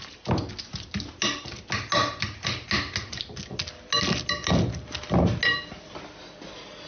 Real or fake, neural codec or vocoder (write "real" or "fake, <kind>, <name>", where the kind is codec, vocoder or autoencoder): real